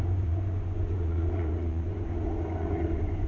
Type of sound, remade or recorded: remade